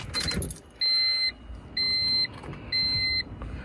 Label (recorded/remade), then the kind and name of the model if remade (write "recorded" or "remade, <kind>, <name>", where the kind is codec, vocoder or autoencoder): recorded